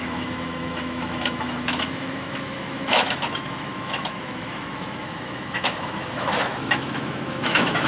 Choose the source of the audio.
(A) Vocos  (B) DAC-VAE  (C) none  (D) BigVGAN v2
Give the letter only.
B